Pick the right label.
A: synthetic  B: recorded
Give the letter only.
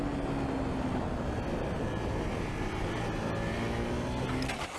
B